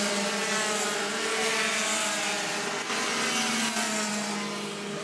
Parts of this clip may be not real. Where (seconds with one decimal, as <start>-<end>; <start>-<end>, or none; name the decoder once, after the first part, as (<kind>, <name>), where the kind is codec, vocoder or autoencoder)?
none